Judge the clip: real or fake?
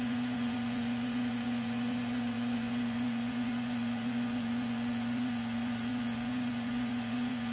fake